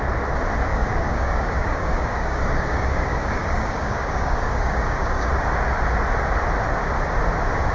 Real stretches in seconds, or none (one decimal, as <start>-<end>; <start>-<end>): 0.0-0.7; 5.3-7.7